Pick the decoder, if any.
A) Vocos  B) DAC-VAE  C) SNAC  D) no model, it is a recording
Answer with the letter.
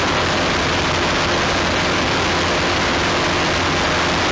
D